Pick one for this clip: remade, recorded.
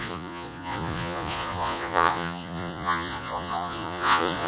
remade